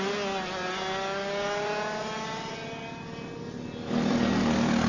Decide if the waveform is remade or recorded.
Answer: recorded